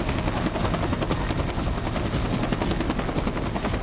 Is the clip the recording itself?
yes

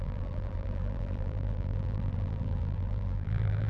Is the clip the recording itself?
no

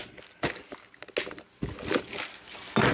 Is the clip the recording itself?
yes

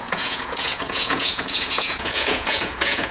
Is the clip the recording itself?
no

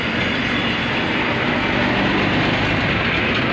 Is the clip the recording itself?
yes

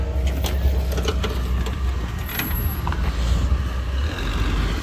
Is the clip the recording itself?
yes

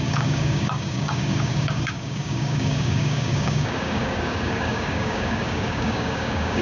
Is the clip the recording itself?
no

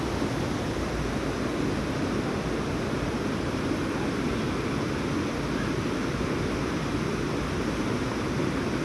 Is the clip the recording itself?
yes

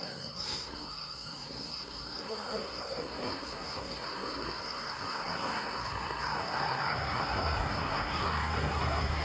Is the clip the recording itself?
no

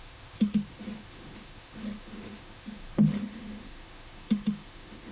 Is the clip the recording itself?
no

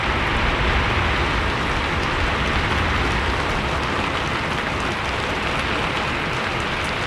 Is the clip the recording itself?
yes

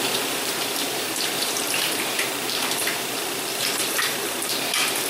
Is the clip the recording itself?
no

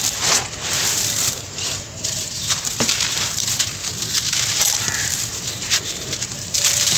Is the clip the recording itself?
no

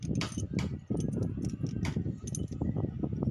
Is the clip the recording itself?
yes